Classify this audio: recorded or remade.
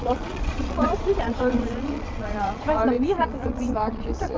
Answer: remade